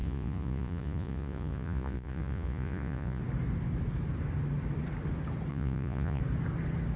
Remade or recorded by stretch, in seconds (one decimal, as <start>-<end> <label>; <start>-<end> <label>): 0.0-3.2 remade; 3.2-5.5 recorded; 5.5-6.2 remade; 6.2-7.0 recorded